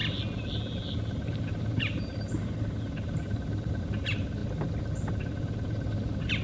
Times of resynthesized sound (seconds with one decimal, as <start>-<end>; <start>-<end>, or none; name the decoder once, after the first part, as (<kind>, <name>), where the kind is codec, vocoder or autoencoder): none